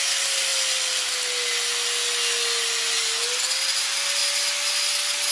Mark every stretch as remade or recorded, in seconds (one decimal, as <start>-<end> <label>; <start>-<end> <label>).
0.0-5.3 recorded